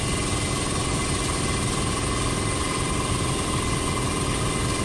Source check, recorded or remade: recorded